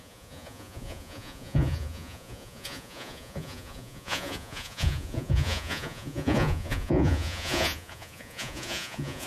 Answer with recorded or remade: remade